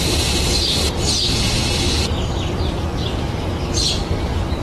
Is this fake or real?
real